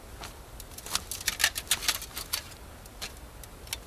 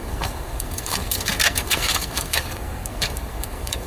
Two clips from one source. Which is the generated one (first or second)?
second